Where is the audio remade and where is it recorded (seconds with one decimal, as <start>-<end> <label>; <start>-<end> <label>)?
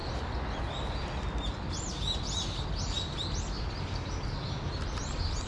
0.0-5.5 recorded